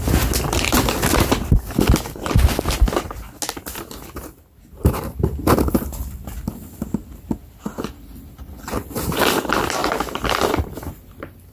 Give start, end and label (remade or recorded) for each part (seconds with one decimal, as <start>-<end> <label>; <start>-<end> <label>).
0.0-11.5 recorded